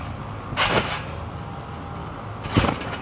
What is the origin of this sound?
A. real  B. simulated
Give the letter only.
A